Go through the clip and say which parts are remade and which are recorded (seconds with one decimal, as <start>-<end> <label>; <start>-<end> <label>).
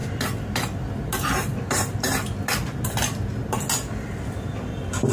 0.0-5.1 recorded